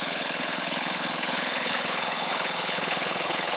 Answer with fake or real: fake